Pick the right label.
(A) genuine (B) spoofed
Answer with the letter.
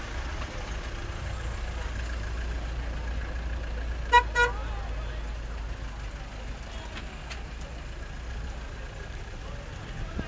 A